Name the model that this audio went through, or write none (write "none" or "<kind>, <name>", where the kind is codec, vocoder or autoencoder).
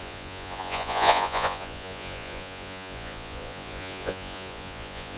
vocoder, Vocos